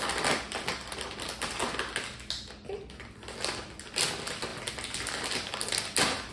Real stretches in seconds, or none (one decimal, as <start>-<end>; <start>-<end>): 0.0-6.3